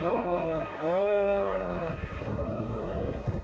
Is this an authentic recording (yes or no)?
no